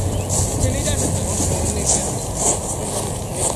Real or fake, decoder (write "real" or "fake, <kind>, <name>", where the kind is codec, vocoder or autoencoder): real